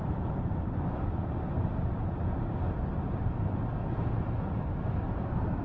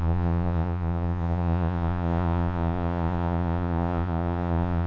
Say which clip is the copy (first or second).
second